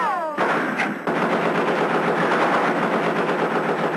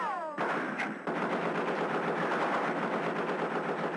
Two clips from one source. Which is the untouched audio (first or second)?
first